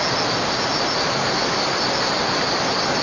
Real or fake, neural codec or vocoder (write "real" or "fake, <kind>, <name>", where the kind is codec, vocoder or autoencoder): real